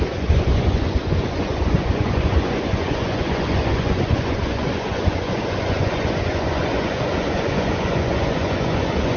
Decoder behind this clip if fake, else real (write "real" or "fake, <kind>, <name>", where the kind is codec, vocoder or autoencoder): fake, vocoder, Vocos